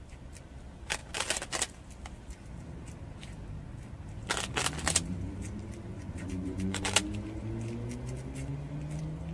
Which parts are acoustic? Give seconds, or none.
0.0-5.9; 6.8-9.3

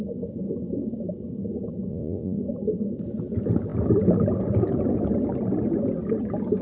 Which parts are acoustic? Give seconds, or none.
0.0-1.9; 2.4-6.6

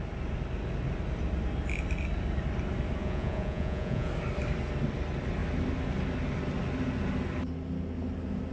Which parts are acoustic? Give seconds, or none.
0.0-3.0; 4.1-8.5

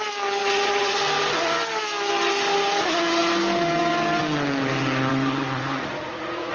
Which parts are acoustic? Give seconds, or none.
0.0-0.4; 1.0-5.1